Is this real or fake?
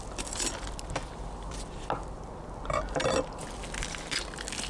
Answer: real